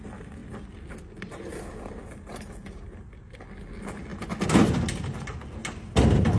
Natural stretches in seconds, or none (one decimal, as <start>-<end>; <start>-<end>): 0.0-6.4